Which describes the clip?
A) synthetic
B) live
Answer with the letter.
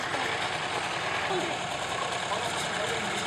B